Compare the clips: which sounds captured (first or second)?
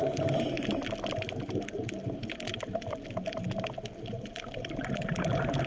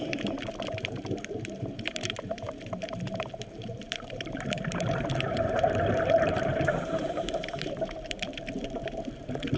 first